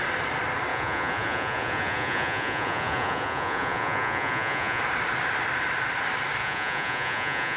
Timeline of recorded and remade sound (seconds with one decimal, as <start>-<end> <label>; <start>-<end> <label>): 0.0-0.7 recorded; 0.7-4.8 remade; 4.8-6.4 recorded; 6.4-7.6 remade